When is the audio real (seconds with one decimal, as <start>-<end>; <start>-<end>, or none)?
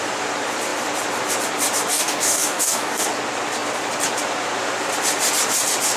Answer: 0.0-1.9; 3.1-6.0